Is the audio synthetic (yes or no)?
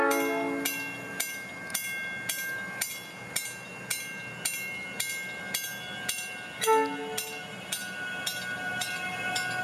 no